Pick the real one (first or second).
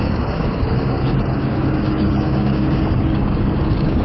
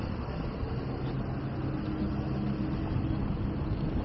second